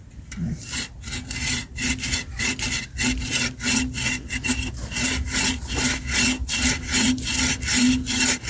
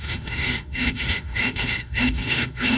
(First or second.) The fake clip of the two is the second